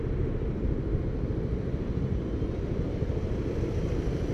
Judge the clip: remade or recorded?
recorded